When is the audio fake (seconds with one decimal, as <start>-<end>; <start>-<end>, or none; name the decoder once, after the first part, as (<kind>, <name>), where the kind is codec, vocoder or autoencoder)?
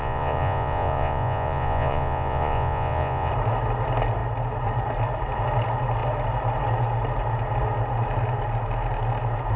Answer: 0.0-3.3 (vocoder, Vocos)